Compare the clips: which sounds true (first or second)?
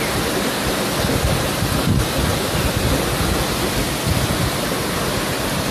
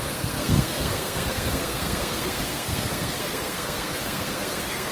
first